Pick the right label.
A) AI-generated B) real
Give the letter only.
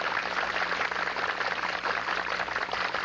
B